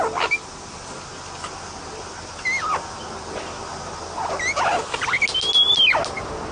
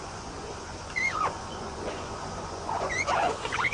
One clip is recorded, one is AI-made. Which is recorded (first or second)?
first